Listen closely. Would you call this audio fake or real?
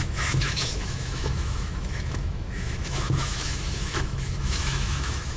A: fake